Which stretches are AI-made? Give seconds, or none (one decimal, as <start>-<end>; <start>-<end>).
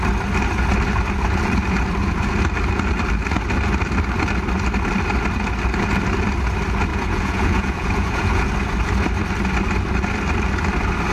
6.9-8.5